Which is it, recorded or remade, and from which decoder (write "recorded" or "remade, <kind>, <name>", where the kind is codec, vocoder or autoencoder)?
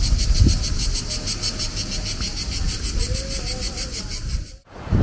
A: recorded